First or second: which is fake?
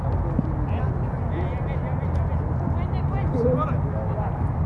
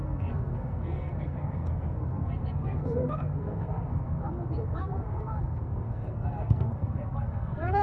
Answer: second